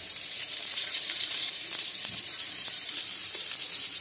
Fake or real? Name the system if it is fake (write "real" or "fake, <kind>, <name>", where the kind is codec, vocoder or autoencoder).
fake, vocoder, BigVGAN v2